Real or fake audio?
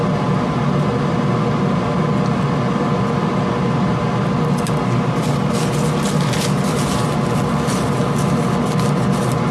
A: real